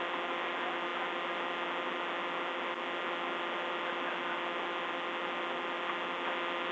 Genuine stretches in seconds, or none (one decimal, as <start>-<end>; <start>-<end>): 0.0-6.7

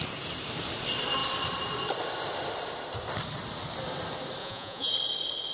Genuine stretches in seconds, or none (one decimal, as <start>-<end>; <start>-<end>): 0.0-4.4; 4.9-5.5